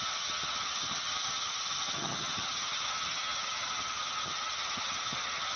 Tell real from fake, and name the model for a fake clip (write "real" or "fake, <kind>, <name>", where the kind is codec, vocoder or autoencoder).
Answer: fake, vocoder, HiFi-GAN